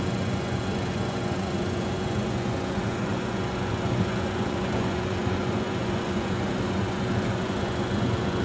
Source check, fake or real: fake